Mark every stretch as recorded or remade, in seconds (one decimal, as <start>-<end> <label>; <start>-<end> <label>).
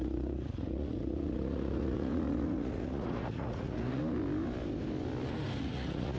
0.0-4.0 remade; 4.0-5.6 recorded; 5.6-6.2 remade